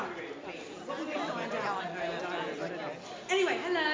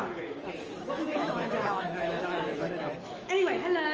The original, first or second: first